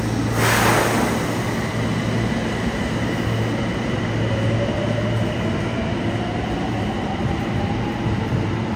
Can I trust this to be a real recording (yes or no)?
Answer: yes